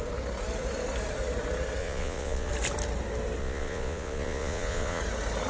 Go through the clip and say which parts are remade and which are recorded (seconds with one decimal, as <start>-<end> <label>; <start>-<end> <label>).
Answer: 0.0-1.8 recorded; 1.8-2.5 remade; 2.5-3.4 recorded; 3.4-5.0 remade; 5.0-5.5 recorded

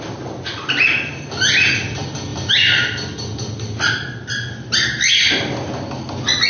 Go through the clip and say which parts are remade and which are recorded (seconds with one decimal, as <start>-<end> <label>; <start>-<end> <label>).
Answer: 0.0-6.5 recorded

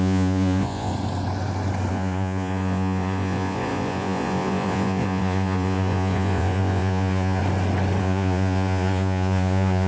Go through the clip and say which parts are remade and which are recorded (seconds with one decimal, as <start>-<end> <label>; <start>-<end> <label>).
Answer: 0.0-0.9 remade; 0.9-1.9 recorded; 1.9-7.4 remade; 7.4-8.0 recorded; 8.0-9.9 remade